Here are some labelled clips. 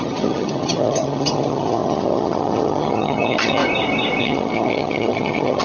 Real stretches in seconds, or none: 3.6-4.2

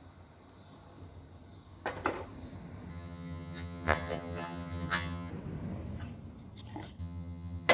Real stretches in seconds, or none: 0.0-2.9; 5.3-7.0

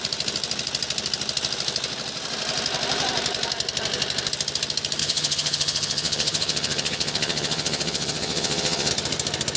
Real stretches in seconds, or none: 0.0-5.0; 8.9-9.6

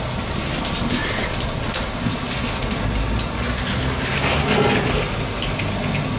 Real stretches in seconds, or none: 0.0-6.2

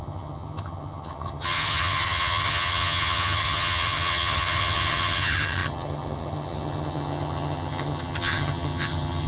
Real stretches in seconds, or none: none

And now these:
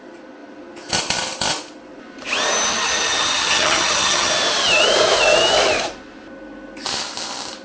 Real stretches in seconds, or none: 0.0-2.7; 4.3-7.6

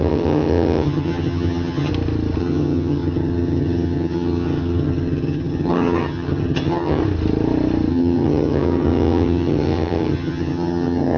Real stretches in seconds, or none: 1.9-2.4; 7.0-7.9

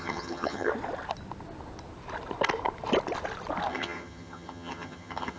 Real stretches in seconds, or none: 0.7-3.7